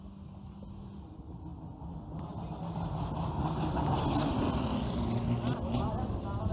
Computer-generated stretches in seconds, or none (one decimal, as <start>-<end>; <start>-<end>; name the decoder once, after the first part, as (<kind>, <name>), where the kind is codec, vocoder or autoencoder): none